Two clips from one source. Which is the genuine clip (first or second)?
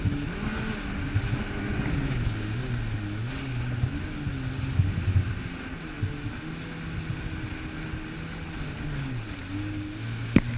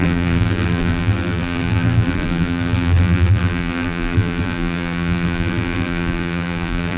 first